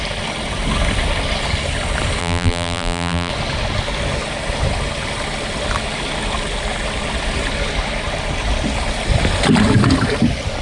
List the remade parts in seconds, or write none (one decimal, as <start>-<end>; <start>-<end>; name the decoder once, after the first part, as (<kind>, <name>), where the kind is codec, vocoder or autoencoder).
2.2-3.3 (vocoder, BigVGAN v2)